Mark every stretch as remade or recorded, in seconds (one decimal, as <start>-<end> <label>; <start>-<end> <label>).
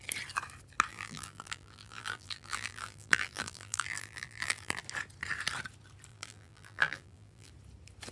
0.0-0.9 recorded; 0.9-4.8 remade; 4.8-6.1 recorded; 6.1-7.5 remade; 7.5-8.1 recorded